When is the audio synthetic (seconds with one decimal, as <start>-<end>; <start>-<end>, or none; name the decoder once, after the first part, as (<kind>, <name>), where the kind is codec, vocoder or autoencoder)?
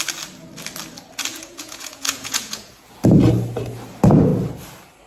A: 1.3-2.9 (vocoder, Vocos)